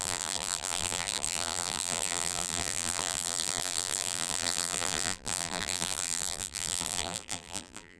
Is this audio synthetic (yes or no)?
yes